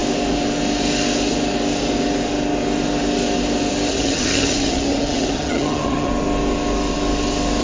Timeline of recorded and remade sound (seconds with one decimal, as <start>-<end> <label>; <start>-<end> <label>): 0.0-3.9 recorded; 3.9-6.1 remade; 6.1-7.6 recorded